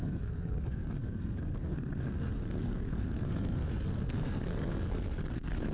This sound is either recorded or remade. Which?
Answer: remade